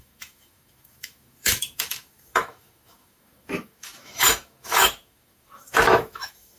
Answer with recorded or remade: remade